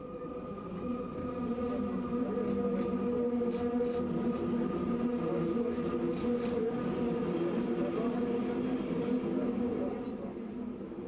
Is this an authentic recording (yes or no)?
yes